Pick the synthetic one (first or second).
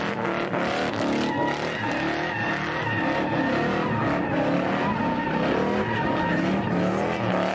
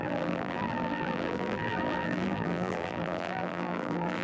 second